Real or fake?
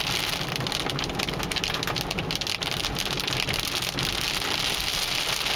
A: real